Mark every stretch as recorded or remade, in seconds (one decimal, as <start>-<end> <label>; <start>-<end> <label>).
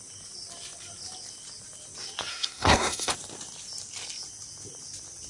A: 0.0-2.3 recorded; 2.3-3.1 remade; 3.1-5.3 recorded